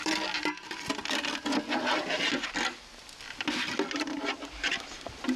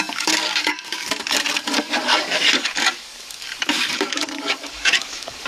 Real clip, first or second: first